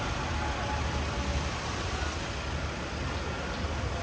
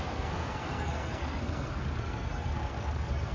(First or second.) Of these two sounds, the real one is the first